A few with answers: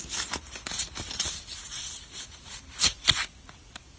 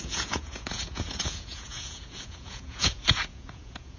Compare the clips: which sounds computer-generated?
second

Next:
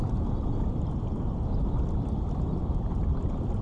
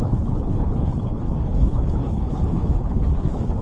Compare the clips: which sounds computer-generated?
second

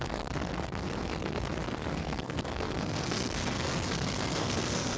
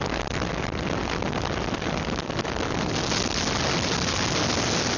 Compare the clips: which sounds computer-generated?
first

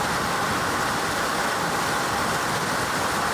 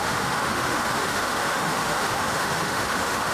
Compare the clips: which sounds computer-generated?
second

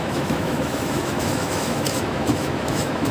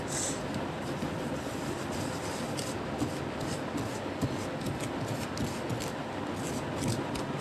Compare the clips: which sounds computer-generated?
first